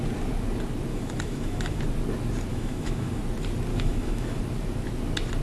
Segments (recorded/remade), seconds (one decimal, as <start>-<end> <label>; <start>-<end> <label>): 0.0-0.9 recorded; 0.9-1.8 remade; 1.8-2.5 recorded; 2.5-3.2 remade; 3.2-3.7 recorded; 3.7-4.4 remade; 4.4-5.4 recorded